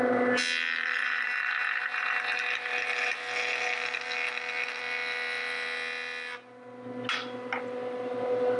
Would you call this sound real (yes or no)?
yes